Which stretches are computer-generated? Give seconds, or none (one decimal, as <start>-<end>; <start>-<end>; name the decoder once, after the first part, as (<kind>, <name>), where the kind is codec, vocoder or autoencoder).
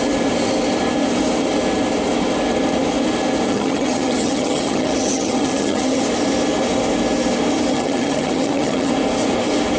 3.5-6.0 (vocoder, HiFi-GAN); 7.7-8.9